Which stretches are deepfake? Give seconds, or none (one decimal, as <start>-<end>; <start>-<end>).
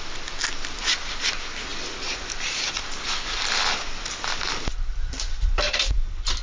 none